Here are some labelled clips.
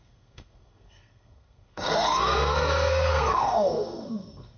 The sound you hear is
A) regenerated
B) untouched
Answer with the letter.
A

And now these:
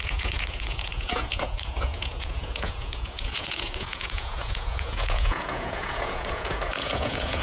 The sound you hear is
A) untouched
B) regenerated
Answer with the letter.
B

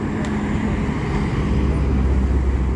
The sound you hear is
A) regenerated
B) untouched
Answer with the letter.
B